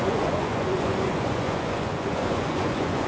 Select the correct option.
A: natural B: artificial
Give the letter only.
B